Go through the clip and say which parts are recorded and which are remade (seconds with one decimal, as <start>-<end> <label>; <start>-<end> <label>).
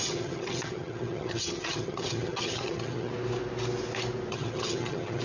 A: 0.0-3.1 remade; 3.1-4.3 recorded; 4.3-5.2 remade